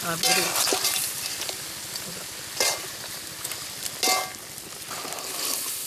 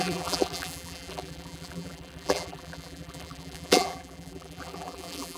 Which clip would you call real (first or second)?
first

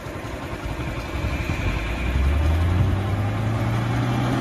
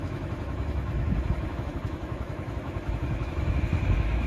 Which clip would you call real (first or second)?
first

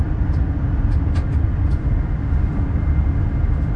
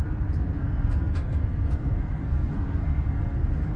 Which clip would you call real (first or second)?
first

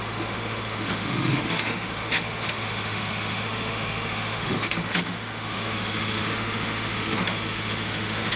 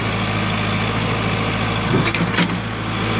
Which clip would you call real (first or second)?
second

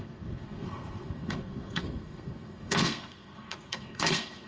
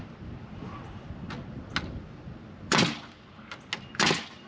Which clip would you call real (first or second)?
second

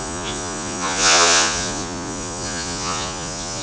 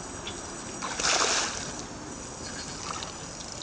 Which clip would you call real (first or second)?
second